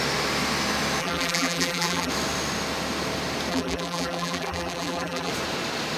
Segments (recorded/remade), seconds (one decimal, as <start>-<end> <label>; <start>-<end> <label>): 0.0-1.0 recorded; 1.0-2.1 remade; 2.1-3.5 recorded; 3.5-5.3 remade; 5.3-6.0 recorded

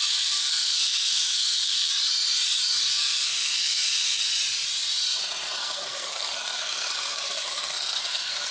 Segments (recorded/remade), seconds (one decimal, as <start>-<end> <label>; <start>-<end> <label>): 0.0-1.9 remade; 1.9-2.9 recorded; 2.9-4.2 remade; 4.2-5.6 recorded; 5.6-8.5 remade